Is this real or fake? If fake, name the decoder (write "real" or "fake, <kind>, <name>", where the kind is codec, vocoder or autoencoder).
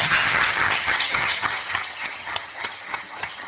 fake, vocoder, HiFi-GAN